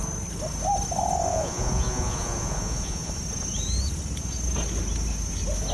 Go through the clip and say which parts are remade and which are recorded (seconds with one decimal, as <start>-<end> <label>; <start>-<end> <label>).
0.0-1.3 recorded; 1.3-3.1 remade; 3.1-5.7 recorded